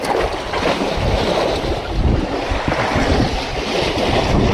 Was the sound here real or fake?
real